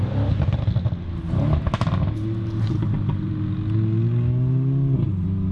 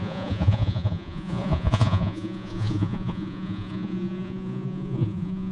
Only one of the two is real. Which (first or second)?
first